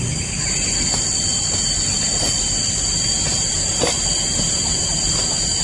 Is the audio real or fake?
real